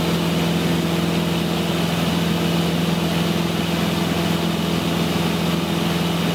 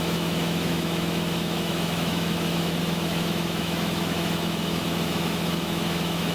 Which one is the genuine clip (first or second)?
first